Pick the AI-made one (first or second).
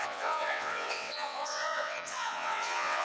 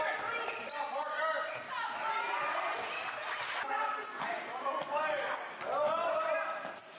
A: first